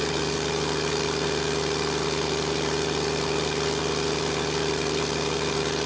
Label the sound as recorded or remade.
recorded